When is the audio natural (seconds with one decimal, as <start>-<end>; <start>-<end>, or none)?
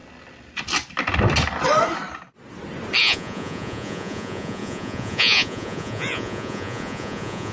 0.0-3.0